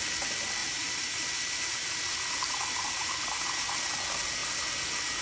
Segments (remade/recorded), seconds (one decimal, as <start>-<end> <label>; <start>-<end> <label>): 0.0-0.6 recorded; 0.6-3.7 remade; 3.7-5.2 recorded